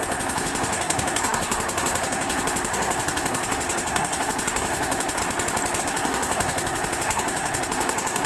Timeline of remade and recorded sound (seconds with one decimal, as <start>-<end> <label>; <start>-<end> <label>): 0.0-5.2 remade; 5.2-5.8 recorded; 5.8-8.3 remade